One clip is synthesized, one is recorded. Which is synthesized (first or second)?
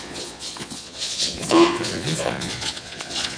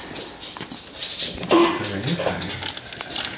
first